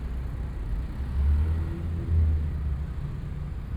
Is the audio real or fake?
real